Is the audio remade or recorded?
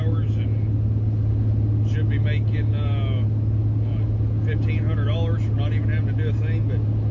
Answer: recorded